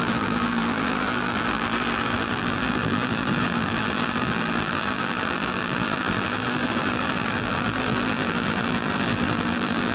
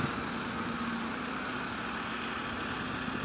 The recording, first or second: second